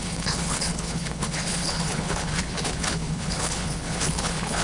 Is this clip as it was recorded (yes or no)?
no